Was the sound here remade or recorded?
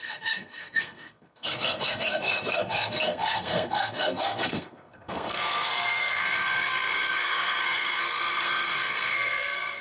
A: remade